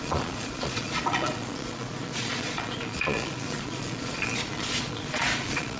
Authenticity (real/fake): fake